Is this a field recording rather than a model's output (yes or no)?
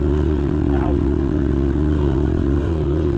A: no